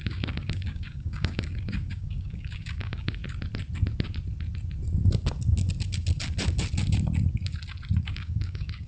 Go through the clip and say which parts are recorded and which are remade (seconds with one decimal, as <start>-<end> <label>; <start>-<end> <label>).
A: 0.0-3.2 remade; 3.2-8.0 recorded; 8.0-8.9 remade